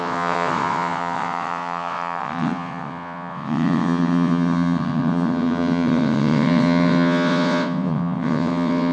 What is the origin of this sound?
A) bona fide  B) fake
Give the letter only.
B